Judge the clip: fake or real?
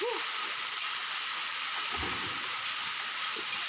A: fake